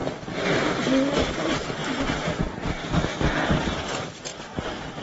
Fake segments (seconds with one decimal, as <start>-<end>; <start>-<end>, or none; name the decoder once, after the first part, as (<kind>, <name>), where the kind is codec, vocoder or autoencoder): none